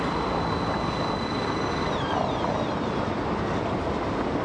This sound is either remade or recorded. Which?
recorded